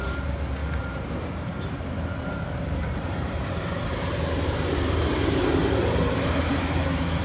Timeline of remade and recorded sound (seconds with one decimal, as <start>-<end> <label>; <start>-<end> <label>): 0.0-7.2 remade